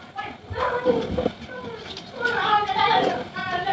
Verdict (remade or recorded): recorded